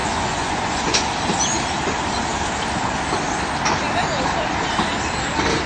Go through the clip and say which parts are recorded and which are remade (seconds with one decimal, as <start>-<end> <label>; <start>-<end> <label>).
0.0-1.1 remade; 1.1-5.7 recorded